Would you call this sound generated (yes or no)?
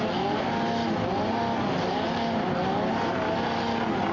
no